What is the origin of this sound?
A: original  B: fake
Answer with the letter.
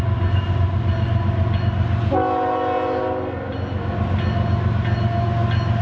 A